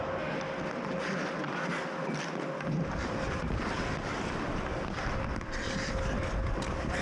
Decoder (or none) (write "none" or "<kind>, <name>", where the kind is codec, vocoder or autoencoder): none